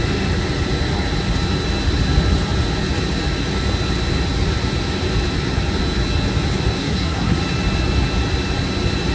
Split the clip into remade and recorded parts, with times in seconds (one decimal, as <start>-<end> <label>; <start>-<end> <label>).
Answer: 0.0-6.8 recorded; 6.8-7.4 remade; 7.4-9.1 recorded

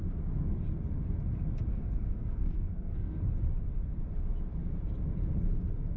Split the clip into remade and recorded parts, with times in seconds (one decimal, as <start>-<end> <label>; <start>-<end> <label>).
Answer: 0.0-1.7 recorded; 1.7-3.2 remade; 3.2-6.0 recorded

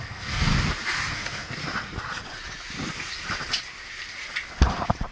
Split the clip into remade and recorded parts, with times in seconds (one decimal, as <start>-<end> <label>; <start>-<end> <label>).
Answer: 0.0-0.5 remade; 0.5-1.1 recorded; 1.1-1.6 remade; 1.6-5.1 recorded